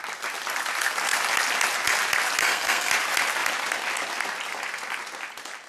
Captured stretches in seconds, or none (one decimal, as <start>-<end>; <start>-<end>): 0.0-2.4; 2.9-5.7